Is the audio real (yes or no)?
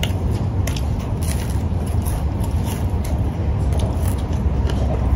yes